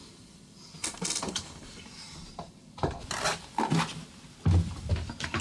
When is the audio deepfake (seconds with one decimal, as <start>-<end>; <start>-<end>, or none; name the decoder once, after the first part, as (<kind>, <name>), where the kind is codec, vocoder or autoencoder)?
0.0-2.9 (vocoder, BigVGAN v2)